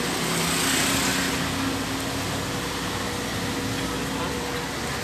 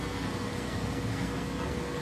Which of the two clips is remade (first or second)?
second